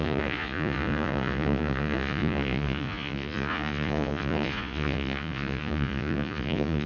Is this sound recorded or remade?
remade